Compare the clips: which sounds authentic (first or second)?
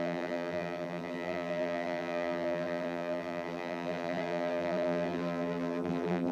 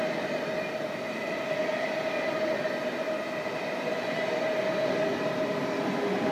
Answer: second